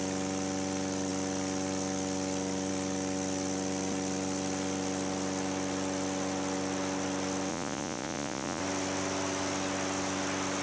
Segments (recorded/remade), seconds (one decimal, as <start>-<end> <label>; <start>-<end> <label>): 0.0-7.5 recorded; 7.5-8.6 remade; 8.6-10.6 recorded